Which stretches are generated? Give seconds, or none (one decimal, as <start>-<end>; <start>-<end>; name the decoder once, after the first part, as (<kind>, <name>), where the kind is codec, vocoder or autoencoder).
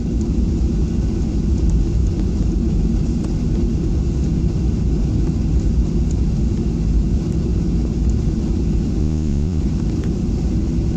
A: 9.0-9.6 (vocoder, Vocos)